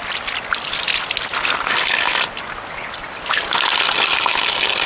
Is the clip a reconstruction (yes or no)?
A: no